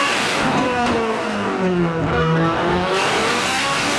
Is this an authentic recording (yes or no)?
no